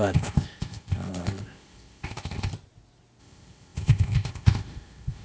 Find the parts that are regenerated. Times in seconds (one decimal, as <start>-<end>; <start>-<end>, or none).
0.0-2.5; 3.2-5.2